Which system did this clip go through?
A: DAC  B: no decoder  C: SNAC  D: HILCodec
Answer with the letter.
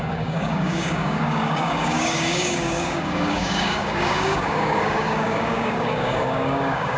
A